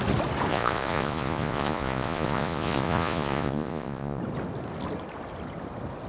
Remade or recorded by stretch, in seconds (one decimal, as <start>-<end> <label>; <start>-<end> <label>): 0.0-0.5 recorded; 0.5-4.2 remade; 4.2-6.1 recorded